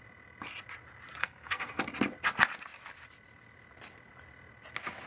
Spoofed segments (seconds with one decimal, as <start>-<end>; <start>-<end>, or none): 1.2-1.8